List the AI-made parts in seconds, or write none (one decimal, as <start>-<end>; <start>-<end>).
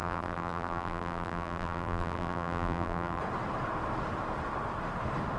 0.0-3.2